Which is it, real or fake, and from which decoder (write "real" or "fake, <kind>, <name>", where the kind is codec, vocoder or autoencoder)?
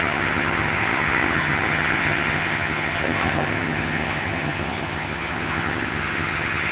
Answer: fake, vocoder, HiFi-GAN